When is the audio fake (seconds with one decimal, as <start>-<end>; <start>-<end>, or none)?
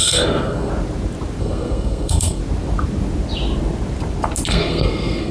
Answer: 0.0-0.7; 1.4-2.4; 4.5-5.3